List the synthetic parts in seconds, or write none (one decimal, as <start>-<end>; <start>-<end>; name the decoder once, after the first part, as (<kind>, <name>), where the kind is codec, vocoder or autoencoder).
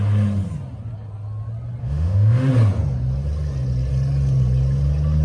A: 1.8-2.5 (autoencoder, DAC-VAE)